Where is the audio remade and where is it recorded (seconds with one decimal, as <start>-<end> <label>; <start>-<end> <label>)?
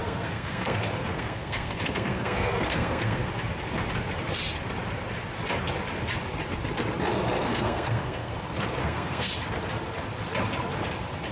0.0-3.3 remade; 3.3-7.5 recorded; 7.5-8.3 remade; 8.3-8.8 recorded; 8.8-9.3 remade; 9.3-11.3 recorded